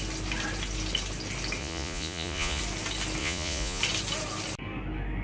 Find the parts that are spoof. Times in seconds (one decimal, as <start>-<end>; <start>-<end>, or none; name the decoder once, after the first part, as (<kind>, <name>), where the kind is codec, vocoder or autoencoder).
1.6-2.6 (vocoder, Vocos); 3.2-3.8